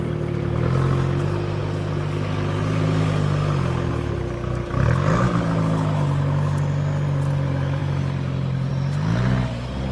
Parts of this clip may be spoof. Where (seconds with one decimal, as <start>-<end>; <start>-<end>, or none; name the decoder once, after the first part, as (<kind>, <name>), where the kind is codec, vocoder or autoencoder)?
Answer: none